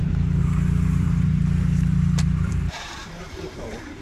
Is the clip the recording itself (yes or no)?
no